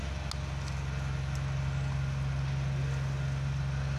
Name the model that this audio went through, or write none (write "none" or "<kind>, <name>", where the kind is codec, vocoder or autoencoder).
none